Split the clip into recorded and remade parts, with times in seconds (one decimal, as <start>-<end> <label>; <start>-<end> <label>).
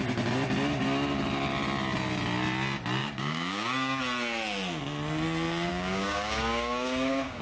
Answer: 0.0-3.0 recorded; 3.0-4.0 remade; 4.0-5.7 recorded; 5.7-7.4 remade